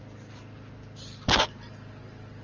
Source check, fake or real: real